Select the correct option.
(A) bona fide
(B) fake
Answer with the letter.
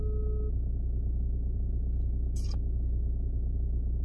A